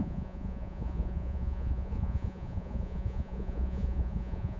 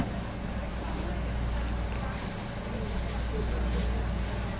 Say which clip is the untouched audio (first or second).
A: second